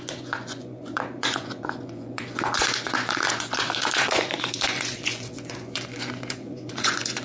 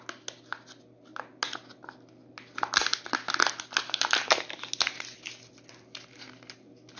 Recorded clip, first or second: second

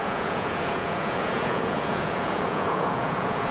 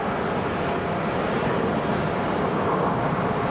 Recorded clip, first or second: second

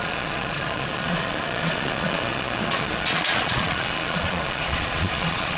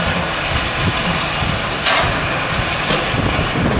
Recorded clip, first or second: second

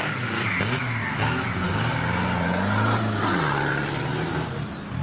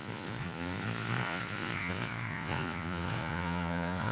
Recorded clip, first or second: first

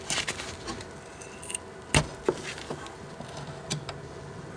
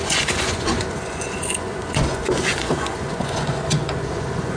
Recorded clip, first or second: first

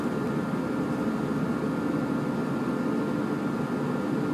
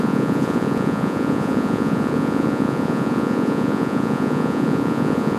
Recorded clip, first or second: first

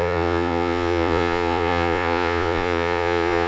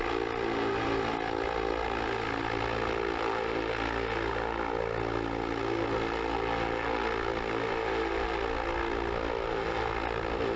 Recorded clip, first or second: second